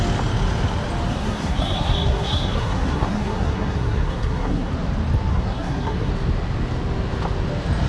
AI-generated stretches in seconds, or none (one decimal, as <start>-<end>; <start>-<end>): 1.1-4.7; 5.3-6.1